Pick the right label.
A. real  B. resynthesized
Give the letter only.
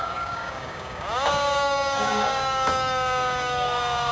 B